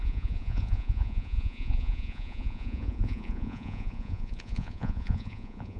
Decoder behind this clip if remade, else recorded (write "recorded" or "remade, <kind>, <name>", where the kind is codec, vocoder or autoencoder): remade, vocoder, Vocos